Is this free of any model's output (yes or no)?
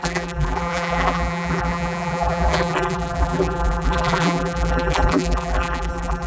no